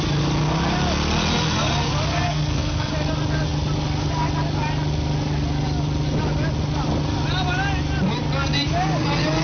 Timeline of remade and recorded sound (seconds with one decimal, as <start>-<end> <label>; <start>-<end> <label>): 0.0-2.1 recorded; 2.1-2.9 remade; 2.9-9.4 recorded